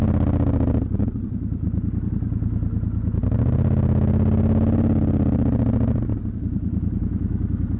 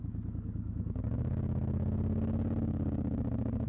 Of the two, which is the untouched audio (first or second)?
first